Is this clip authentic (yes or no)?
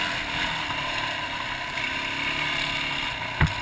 yes